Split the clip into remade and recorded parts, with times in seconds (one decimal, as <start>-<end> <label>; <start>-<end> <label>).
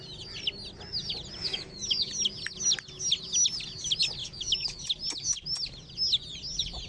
0.0-1.4 recorded; 1.4-2.1 remade; 2.1-4.2 recorded; 4.2-4.8 remade; 4.8-6.9 recorded